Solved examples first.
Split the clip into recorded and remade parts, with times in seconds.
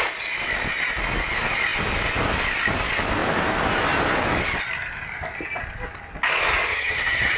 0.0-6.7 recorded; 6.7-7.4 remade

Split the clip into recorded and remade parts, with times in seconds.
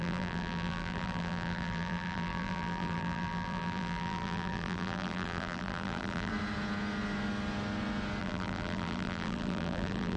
0.0-6.3 remade; 6.3-8.2 recorded; 8.2-10.2 remade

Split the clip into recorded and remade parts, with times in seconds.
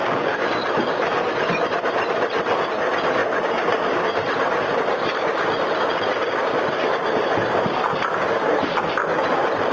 0.0-3.2 remade; 3.2-6.7 recorded; 6.7-9.7 remade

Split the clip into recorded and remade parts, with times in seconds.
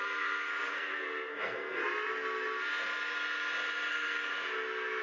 0.0-1.8 remade; 1.8-3.9 recorded; 3.9-4.3 remade; 4.3-5.0 recorded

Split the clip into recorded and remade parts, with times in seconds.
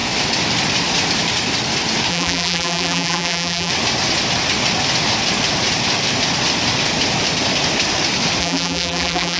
0.0-2.1 recorded; 2.1-3.7 remade; 3.7-8.4 recorded; 8.4-9.4 remade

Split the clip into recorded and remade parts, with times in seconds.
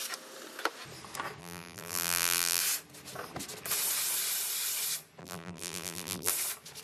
0.0-1.4 recorded; 1.4-2.6 remade; 2.6-5.2 recorded; 5.2-6.3 remade; 6.3-6.8 recorded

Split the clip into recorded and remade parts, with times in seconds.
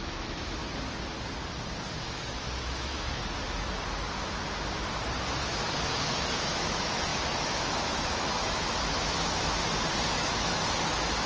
0.0-0.6 remade; 0.6-2.0 recorded; 2.0-3.2 remade; 3.2-6.1 recorded; 6.1-9.6 remade; 9.6-10.1 recorded; 10.1-11.3 remade